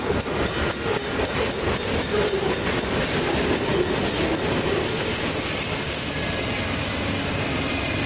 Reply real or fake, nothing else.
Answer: real